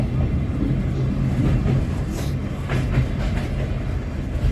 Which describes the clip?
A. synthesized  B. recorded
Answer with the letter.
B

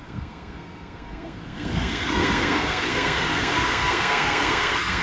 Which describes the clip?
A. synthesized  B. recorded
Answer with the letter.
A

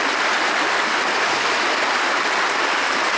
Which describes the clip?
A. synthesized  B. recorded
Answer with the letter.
B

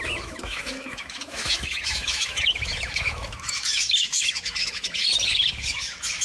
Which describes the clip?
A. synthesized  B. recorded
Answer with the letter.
A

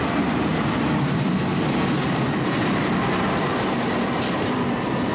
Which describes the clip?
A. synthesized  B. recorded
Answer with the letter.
B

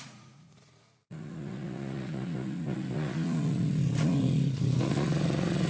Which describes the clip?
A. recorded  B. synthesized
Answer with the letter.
B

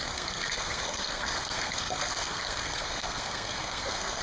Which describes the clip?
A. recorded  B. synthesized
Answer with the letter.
B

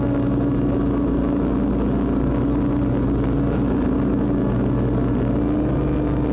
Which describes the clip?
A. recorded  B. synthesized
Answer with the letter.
A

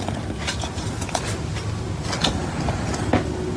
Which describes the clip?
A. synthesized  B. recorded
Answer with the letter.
B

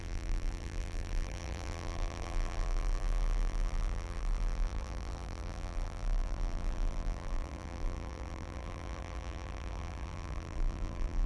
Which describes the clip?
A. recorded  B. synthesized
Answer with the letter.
B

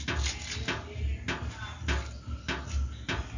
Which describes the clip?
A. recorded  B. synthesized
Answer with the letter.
A